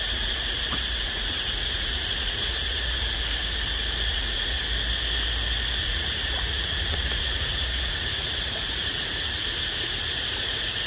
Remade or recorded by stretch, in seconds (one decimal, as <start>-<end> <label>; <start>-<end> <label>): 0.0-3.2 remade; 3.2-4.1 recorded; 4.1-4.6 remade; 4.6-5.8 recorded; 5.8-9.4 remade; 9.4-10.2 recorded; 10.2-10.9 remade